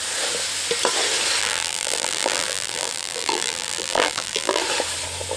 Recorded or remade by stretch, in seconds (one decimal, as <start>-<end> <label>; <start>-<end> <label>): 0.0-1.4 recorded; 1.4-4.6 remade; 4.6-5.4 recorded